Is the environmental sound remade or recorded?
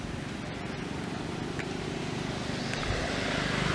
recorded